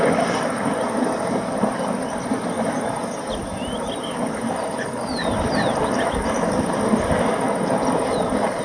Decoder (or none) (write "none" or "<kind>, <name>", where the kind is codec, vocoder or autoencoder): none